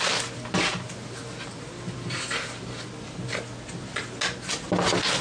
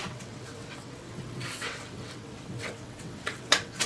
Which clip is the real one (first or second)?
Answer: first